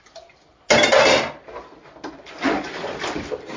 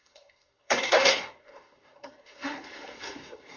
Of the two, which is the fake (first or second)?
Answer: second